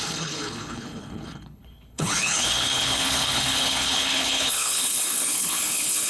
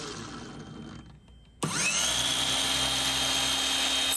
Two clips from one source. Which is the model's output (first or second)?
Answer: first